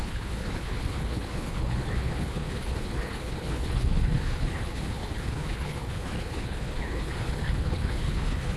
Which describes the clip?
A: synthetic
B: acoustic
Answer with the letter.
A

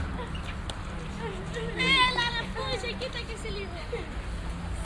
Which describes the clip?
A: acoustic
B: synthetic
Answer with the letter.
A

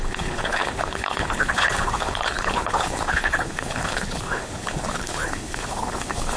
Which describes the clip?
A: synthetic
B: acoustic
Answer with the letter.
A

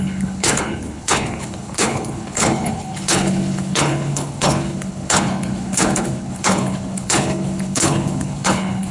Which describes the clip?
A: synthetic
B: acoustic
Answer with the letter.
A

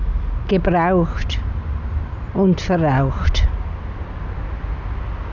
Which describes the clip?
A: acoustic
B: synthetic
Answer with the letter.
A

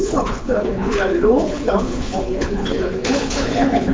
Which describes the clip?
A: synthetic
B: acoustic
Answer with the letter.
A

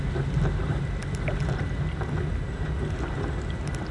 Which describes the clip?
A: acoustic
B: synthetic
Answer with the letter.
A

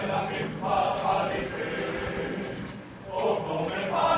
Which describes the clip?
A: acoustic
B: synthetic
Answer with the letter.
A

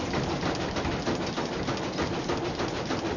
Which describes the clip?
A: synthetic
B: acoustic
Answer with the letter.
B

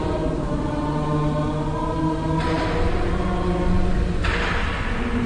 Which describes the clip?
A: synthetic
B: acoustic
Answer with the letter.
B